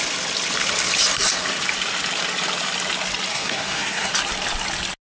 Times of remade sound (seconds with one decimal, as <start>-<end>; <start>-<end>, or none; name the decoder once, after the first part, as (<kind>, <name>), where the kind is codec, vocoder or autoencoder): 3.3-4.1 (codec, SNAC)